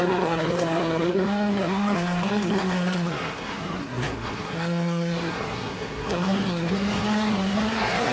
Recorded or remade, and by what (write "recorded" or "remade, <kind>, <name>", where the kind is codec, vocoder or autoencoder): remade, codec, SNAC